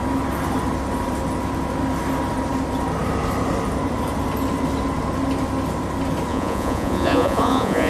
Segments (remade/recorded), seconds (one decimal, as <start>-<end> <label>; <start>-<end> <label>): 0.0-6.3 recorded; 6.3-7.9 remade